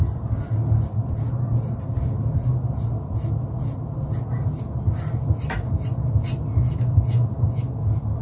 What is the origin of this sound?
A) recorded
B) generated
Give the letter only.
A